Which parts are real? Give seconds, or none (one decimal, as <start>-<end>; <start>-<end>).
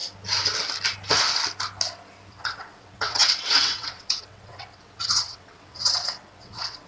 0.0-2.3